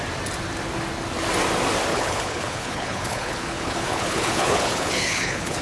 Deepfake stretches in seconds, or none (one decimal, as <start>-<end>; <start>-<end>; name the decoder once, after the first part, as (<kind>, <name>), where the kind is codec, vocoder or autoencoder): 1.9-5.6 (codec, HILCodec)